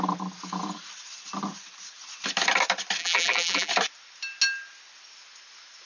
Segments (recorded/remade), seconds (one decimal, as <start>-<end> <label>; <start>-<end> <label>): 0.0-3.0 recorded; 3.0-3.7 remade; 3.7-5.9 recorded